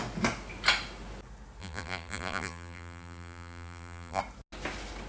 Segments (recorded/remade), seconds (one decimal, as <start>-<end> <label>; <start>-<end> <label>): 0.0-1.6 recorded; 1.6-4.2 remade; 4.2-5.1 recorded